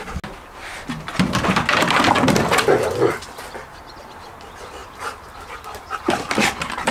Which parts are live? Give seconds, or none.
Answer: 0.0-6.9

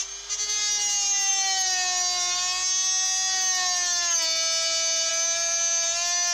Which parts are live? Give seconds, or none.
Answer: 0.0-6.3

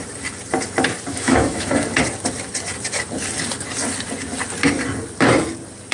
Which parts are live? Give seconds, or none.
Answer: 0.0-1.1; 1.7-5.9

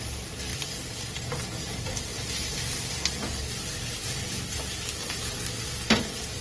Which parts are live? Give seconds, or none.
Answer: 0.0-6.4

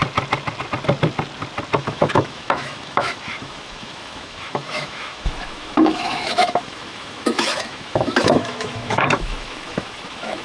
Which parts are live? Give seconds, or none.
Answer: 0.0-1.8

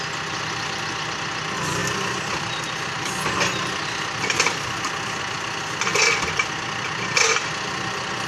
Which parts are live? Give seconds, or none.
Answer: 0.0-8.3

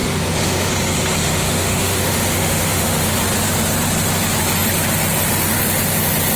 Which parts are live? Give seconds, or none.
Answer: 0.7-1.2; 3.1-6.4

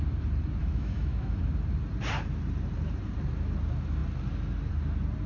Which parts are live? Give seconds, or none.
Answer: 0.0-0.6; 1.4-5.3